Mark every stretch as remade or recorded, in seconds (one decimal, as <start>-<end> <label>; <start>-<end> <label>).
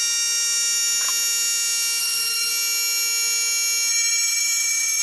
0.0-2.0 recorded; 2.0-2.5 remade; 2.5-3.9 recorded; 3.9-5.0 remade